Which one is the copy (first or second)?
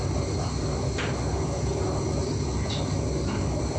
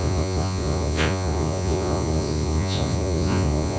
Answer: second